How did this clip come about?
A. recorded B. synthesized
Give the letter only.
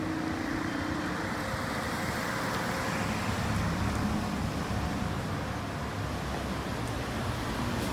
A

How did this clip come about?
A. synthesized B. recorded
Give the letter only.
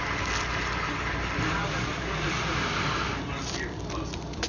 B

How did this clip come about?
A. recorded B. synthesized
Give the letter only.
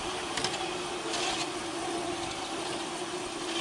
A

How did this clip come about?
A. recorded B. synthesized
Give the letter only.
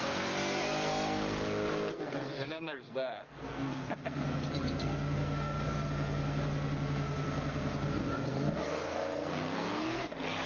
B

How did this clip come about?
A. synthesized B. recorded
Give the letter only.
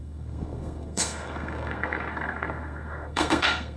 A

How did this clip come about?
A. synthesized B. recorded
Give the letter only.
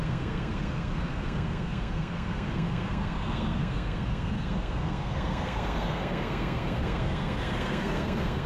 A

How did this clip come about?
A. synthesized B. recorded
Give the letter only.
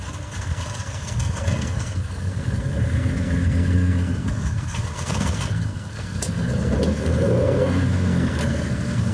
A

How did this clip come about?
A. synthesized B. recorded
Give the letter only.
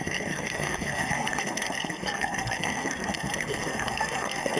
A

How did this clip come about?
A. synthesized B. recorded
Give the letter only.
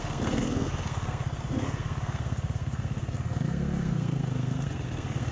A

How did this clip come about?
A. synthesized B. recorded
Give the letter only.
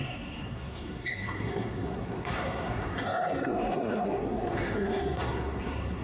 A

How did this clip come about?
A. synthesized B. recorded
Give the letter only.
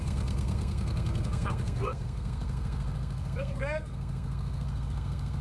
A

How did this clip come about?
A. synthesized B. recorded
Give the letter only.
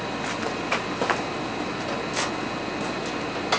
B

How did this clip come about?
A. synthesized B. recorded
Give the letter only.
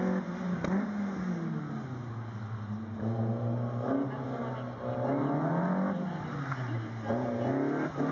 B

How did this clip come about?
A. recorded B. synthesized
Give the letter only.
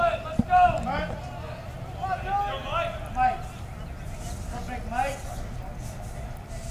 A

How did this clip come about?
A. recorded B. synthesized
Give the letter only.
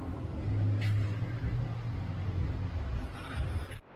A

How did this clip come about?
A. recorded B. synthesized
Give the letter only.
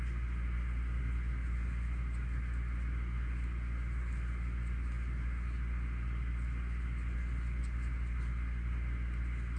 A